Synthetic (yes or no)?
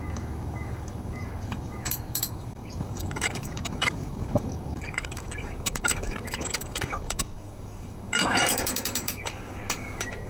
yes